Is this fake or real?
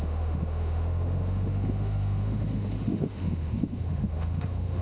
fake